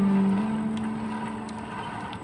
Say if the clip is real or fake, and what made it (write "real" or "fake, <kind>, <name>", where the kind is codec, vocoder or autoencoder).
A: real